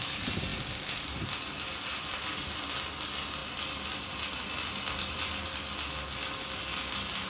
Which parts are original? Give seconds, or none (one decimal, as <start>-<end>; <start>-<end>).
0.0-7.3